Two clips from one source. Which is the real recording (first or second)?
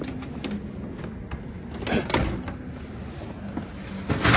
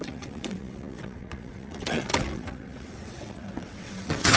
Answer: first